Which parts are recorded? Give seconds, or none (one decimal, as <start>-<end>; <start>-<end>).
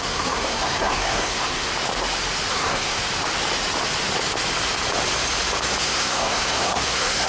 1.7-2.5; 3.0-5.8